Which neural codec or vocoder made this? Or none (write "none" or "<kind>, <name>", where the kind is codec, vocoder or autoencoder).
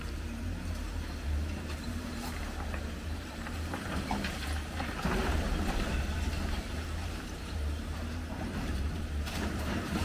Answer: vocoder, BigVGAN v2